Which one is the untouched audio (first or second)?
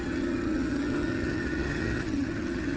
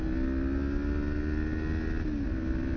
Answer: second